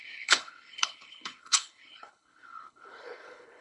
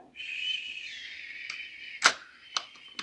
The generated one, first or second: first